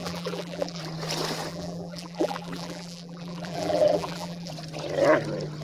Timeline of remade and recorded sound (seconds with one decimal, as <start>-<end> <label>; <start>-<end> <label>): 0.0-0.8 remade; 0.8-1.5 recorded; 1.5-4.5 remade; 4.5-5.6 recorded